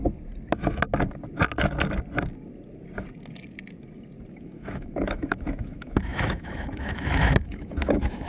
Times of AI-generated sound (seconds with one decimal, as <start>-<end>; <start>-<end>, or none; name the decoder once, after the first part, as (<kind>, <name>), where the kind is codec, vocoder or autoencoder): 4.3-8.3 (autoencoder, DAC-VAE)